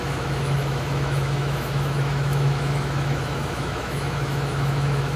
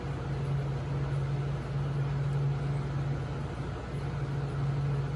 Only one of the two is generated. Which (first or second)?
first